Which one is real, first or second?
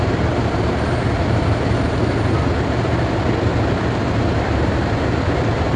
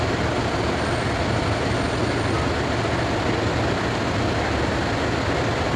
second